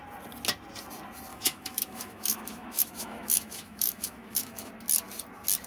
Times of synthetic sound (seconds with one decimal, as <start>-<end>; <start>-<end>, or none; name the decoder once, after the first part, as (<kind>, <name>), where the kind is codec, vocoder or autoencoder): 1.3-4.7 (autoencoder, DAC-VAE)